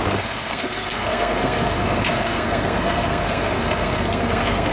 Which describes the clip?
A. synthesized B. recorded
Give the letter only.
A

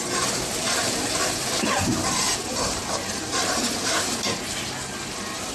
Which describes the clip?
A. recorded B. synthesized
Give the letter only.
A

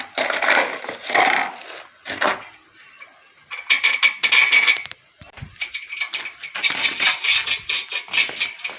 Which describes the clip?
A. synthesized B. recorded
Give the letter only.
B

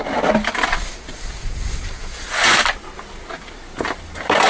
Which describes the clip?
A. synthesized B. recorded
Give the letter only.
B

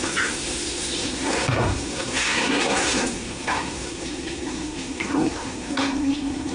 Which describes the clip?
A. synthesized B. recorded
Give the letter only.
A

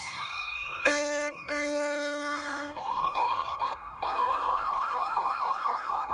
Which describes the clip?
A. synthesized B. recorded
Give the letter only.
A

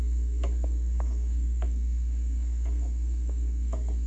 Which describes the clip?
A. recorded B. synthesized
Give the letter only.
B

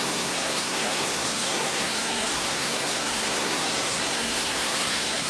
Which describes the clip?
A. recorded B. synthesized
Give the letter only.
B